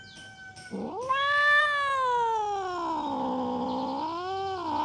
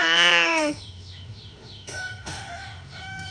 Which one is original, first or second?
first